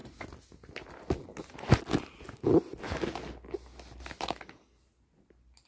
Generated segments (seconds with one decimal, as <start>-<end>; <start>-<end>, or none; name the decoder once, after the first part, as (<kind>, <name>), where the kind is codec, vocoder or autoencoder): none